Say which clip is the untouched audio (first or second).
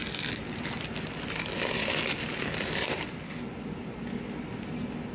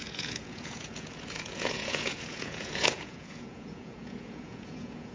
first